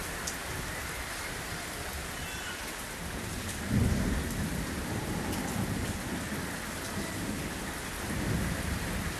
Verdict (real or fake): real